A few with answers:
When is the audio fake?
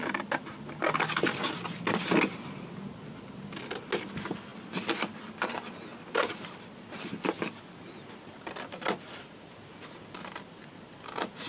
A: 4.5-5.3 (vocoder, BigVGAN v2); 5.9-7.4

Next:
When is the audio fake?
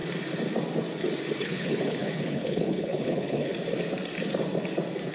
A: 1.4-3.5 (codec, HILCodec)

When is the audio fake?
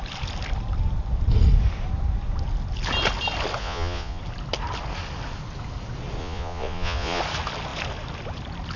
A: 3.6-4.2 (vocoder, Vocos); 6.2-7.2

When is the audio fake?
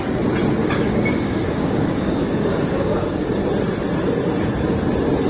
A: 0.6-3.3 (codec, DAC)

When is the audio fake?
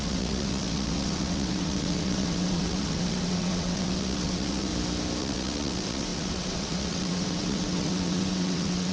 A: 0.0-4.7 (vocoder, WaveNeXt); 5.2-8.9